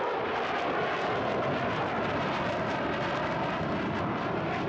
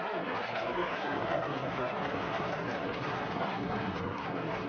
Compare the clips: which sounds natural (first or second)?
first